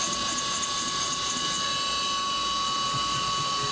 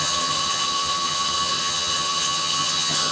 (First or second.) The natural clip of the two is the first